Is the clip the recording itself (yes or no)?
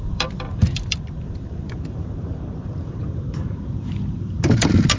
no